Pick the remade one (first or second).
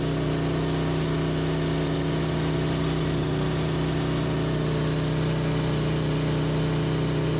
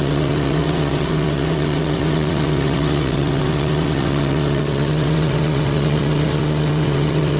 second